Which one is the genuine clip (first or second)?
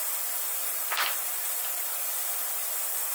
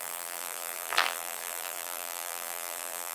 first